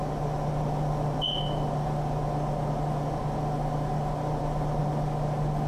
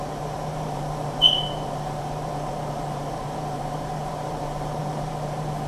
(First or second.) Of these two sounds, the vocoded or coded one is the second